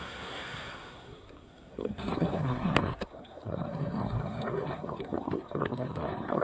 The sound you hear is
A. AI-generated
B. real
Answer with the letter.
A